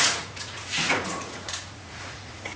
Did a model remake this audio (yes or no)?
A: yes